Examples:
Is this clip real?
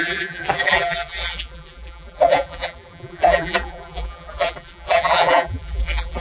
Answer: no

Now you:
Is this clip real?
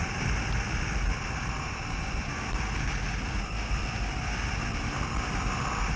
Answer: no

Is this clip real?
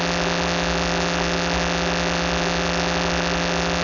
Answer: no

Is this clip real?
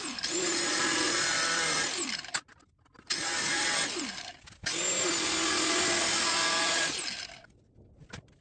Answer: yes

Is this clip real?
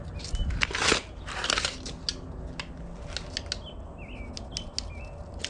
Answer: yes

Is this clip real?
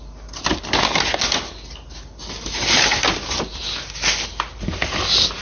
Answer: yes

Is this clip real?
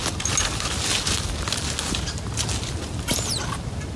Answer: yes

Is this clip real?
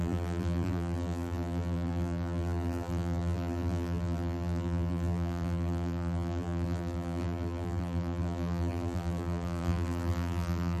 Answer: no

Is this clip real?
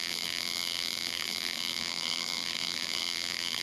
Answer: no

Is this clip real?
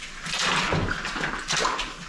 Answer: yes